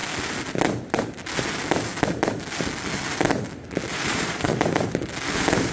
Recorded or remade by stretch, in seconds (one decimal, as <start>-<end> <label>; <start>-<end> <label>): 0.0-3.9 recorded; 3.9-4.6 remade; 4.6-5.7 recorded